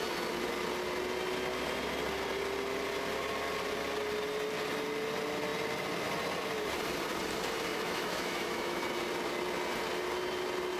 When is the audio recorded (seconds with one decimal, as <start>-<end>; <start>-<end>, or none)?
0.0-7.7; 8.8-10.8